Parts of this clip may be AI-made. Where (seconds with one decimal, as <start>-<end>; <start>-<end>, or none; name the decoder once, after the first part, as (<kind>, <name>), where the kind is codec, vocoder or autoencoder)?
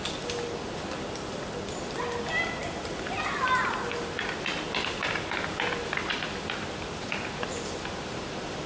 none